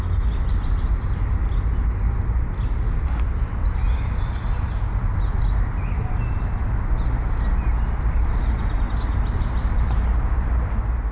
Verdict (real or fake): real